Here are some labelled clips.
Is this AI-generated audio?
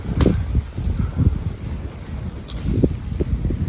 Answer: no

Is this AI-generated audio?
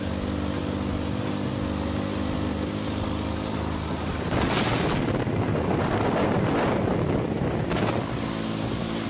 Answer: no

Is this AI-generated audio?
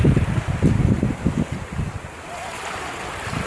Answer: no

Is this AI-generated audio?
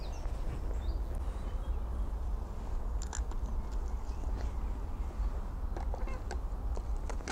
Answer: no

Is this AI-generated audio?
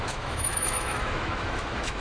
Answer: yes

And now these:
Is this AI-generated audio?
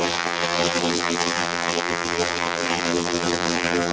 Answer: yes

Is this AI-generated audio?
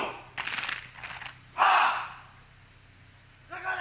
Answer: no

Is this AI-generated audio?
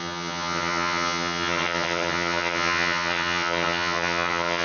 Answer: yes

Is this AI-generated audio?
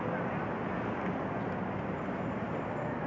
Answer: no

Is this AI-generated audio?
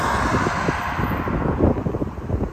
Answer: no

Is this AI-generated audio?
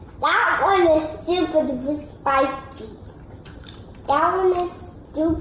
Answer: no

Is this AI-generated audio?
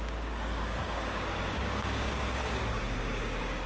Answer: yes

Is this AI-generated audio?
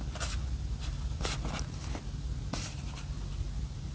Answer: no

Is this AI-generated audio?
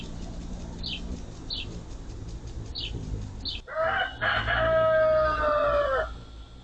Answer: no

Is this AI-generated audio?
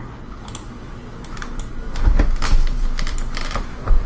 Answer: no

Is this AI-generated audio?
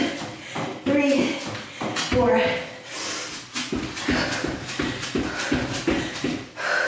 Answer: no